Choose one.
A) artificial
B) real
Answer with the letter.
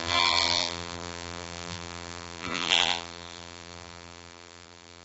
A